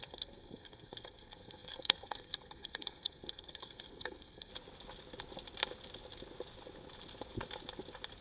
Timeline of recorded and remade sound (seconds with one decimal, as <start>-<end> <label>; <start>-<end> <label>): 0.0-4.5 remade; 4.5-8.2 recorded